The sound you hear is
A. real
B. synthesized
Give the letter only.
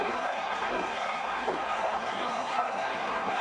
B